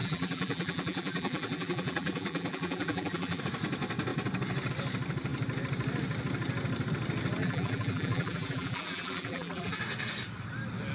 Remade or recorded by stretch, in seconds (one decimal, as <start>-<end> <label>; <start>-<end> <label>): 0.0-3.4 remade; 3.4-7.4 recorded; 7.4-9.8 remade; 9.8-10.9 recorded